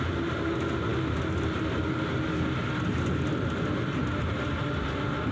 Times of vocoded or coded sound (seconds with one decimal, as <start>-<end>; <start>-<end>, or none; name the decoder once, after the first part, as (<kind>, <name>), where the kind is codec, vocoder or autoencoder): none